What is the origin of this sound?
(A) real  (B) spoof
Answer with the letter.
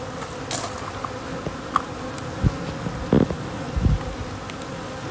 A